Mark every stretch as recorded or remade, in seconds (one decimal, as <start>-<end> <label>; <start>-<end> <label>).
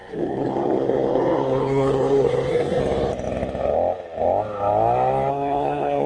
0.0-2.8 remade; 2.8-5.3 recorded; 5.3-6.1 remade